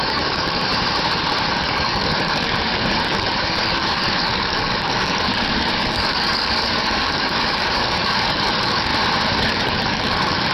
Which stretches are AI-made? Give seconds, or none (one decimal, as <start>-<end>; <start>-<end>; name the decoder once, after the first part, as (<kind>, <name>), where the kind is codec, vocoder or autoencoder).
0.0-0.7 (codec, DAC); 1.6-8.9; 9.5-10.5